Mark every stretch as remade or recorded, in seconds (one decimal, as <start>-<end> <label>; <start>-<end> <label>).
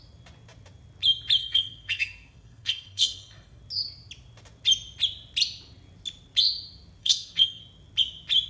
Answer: 0.0-1.4 recorded; 1.4-3.6 remade; 3.6-7.0 recorded; 7.0-7.6 remade; 7.6-8.5 recorded